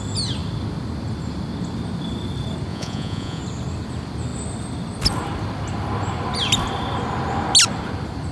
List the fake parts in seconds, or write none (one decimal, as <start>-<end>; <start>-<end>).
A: 2.7-3.4

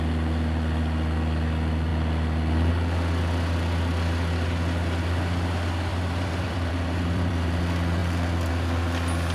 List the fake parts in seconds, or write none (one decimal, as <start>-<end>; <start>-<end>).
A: 5.9-7.6

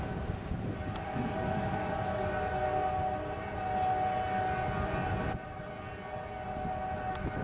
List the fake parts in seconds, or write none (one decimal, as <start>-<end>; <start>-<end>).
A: 5.0-5.7

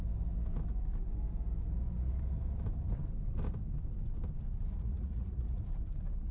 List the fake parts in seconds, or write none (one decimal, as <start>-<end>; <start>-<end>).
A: 4.7-5.6

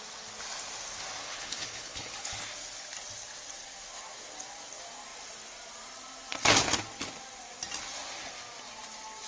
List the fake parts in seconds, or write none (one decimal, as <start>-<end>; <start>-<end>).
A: 1.2-2.4

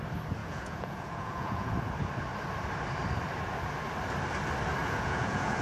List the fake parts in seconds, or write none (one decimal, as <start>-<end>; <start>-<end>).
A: 0.4-1.7; 4.8-5.6

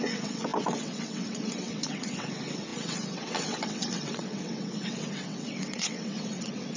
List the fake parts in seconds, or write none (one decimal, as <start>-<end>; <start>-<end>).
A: 0.0-6.8